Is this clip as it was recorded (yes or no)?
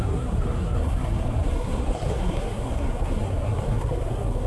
no